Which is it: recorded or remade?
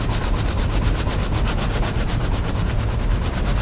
recorded